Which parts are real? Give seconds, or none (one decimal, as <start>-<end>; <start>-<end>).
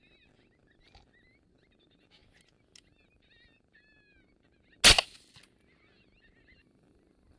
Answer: 0.0-7.4